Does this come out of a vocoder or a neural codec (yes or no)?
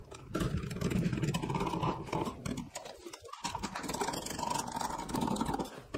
no